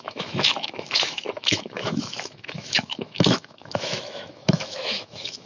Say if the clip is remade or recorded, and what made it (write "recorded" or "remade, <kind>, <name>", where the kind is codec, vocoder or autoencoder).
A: remade, autoencoder, DAC-VAE